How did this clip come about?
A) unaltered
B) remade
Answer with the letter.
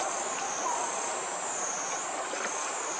A